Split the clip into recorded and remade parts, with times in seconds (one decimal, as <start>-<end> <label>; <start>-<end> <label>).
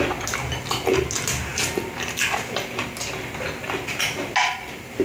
0.0-5.0 recorded